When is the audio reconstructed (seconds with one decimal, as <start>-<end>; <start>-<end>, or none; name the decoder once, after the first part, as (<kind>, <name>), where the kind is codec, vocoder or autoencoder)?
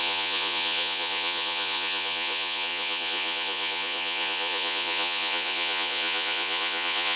0.0-7.2 (vocoder, Vocos)